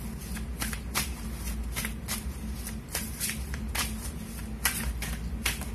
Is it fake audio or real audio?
real